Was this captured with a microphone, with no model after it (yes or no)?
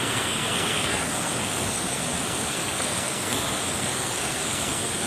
no